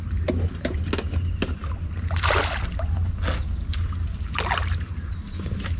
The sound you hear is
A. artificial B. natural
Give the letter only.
B